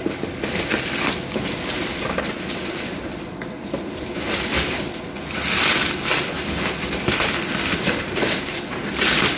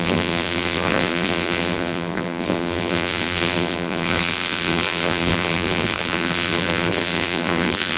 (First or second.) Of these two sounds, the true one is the first